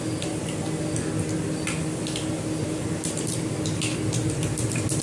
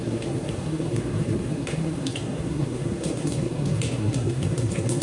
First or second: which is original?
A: first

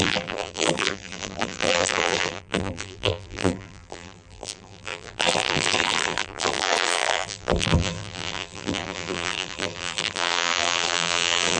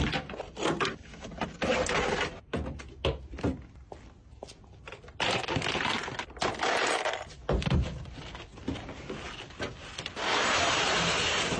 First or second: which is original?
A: second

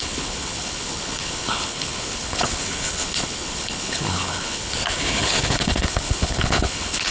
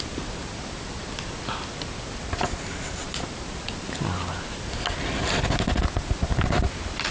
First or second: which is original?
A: second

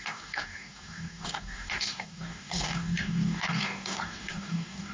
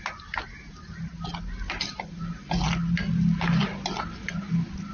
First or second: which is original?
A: second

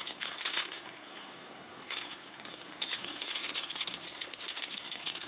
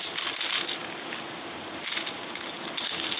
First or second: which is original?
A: second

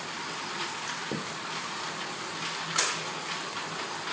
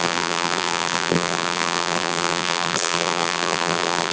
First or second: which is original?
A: first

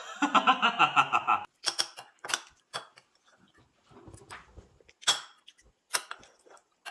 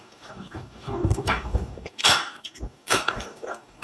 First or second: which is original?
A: first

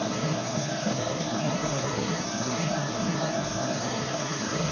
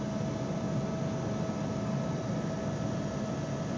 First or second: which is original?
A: second